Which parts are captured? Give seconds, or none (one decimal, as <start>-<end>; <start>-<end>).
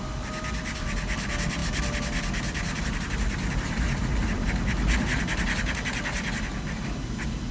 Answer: 0.0-7.5